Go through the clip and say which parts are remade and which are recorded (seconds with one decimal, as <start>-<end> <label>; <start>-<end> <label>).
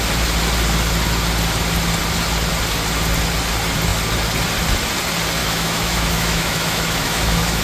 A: 0.0-5.4 recorded; 5.4-7.6 remade